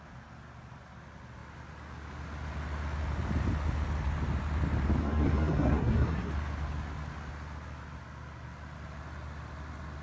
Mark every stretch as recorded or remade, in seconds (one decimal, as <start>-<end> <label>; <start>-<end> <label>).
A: 0.0-5.0 recorded; 5.0-6.3 remade; 6.3-10.0 recorded